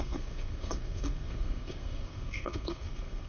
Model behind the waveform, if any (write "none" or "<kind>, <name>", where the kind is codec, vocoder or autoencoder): codec, SNAC